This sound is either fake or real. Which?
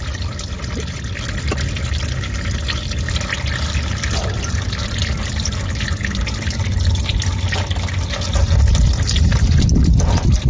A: real